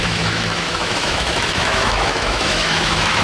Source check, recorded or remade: remade